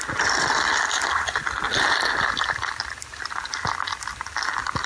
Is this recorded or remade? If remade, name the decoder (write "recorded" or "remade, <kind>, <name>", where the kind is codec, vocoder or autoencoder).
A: recorded